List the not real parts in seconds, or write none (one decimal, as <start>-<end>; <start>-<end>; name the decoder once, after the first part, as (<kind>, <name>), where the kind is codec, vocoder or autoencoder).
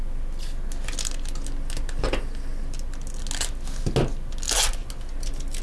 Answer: none